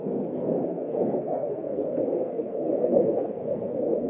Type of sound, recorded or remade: remade